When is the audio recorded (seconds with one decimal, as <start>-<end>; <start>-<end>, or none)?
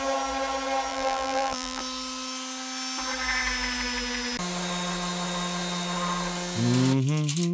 0.0-0.9; 1.8-7.5